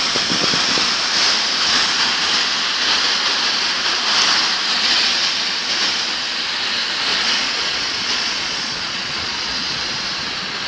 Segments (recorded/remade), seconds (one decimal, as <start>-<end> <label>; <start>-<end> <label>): 0.0-7.1 recorded; 7.1-9.9 remade; 9.9-10.7 recorded